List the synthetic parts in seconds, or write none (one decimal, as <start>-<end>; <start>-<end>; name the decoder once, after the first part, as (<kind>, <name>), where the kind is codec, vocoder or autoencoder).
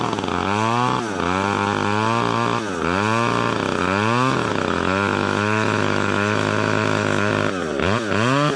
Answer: 4.5-7.3 (autoencoder, DAC-VAE)